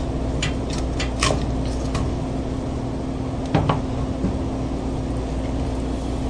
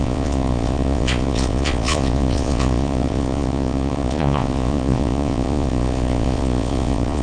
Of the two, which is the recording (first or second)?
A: first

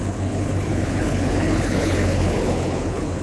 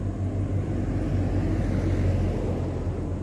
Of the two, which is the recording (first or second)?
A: second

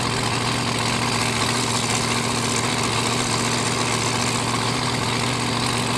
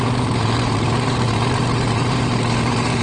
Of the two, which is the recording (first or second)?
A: first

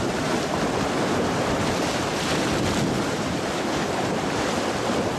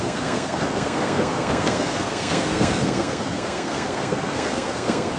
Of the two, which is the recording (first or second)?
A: first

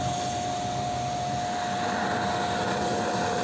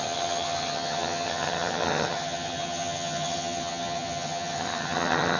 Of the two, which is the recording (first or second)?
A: first